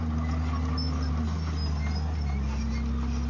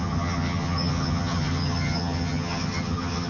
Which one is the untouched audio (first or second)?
first